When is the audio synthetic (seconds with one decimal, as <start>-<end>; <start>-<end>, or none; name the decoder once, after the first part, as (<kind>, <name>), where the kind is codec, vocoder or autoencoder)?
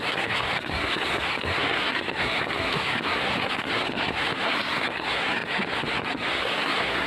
0.0-7.1 (codec, SNAC)